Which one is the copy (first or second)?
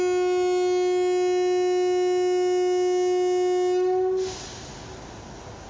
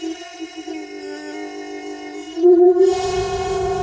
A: second